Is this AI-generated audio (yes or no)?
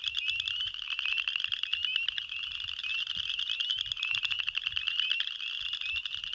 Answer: no